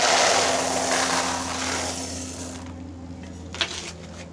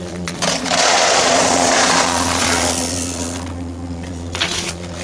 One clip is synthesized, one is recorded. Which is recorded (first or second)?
first